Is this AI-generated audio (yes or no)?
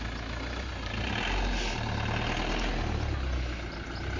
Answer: no